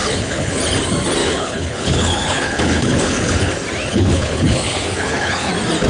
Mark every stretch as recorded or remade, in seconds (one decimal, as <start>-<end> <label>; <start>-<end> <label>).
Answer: 0.0-0.6 remade; 0.6-1.2 recorded; 1.2-3.5 remade; 3.5-3.9 recorded; 3.9-5.5 remade; 5.5-5.9 recorded